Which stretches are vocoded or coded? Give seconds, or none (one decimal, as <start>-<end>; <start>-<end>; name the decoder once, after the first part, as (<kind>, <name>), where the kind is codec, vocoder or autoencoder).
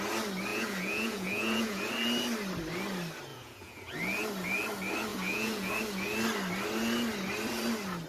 0.5-1.9 (vocoder, Vocos); 3.3-3.9; 5.1-5.8